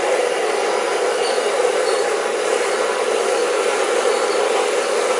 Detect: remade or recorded recorded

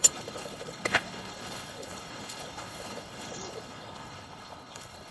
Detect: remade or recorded remade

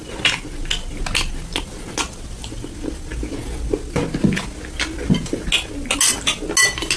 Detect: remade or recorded recorded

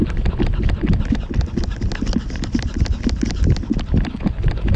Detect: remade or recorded recorded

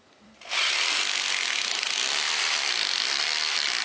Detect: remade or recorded remade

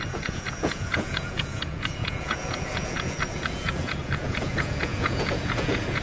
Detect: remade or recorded remade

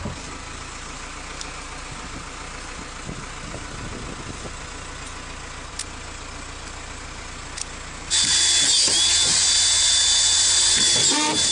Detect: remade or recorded recorded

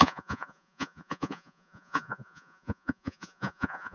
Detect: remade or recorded remade